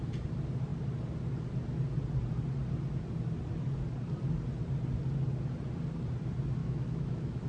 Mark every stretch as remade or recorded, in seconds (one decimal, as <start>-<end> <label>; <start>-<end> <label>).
0.0-6.6 recorded; 6.6-7.5 remade